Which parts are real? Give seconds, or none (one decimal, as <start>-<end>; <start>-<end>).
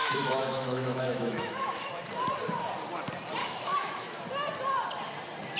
2.0-3.4; 4.2-5.6